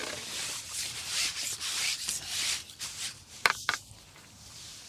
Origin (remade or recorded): remade